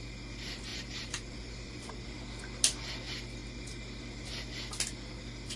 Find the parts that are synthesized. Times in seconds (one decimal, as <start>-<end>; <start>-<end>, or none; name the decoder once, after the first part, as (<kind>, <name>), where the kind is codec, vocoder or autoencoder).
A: 0.7-1.9 (vocoder, BigVGAN v2)